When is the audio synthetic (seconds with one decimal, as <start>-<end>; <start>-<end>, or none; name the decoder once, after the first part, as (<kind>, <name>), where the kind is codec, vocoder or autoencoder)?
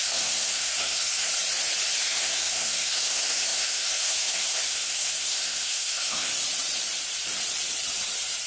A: 0.0-1.3 (codec, SNAC); 2.0-6.3